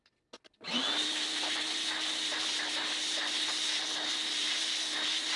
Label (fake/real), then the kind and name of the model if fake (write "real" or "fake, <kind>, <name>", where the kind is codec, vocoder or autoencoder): real